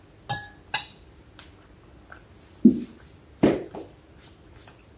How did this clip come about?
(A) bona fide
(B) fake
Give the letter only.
A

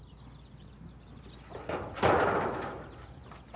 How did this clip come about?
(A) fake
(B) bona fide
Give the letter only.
B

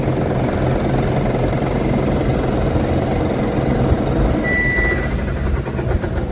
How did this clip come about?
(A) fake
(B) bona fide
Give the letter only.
B